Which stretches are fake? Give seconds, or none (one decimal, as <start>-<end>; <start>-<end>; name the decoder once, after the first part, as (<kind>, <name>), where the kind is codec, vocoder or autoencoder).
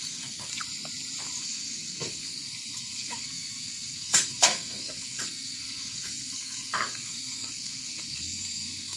0.0-0.5 (codec, SNAC); 1.4-9.0